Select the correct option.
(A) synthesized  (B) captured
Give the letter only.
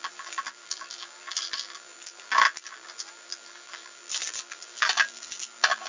A